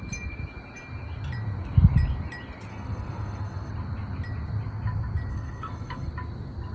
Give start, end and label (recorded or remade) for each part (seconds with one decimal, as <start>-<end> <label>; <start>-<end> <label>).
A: 0.0-2.7 recorded; 2.7-3.7 remade; 3.7-5.3 recorded; 5.3-6.1 remade; 6.1-6.7 recorded